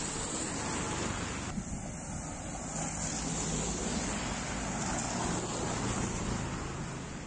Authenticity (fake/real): real